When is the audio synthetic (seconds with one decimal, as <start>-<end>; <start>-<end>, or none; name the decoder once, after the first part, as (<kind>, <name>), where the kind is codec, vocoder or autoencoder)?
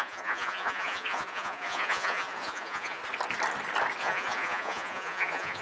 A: 0.0-3.0 (vocoder, Vocos); 4.0-5.6